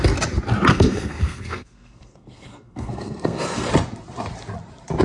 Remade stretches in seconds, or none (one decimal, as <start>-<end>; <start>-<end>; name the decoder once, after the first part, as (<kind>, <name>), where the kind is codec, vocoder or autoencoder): 0.7-3.7 (codec, SNAC)